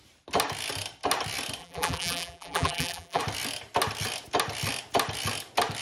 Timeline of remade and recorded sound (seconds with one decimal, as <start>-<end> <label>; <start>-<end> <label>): 0.0-1.6 recorded; 1.6-3.2 remade; 3.2-5.8 recorded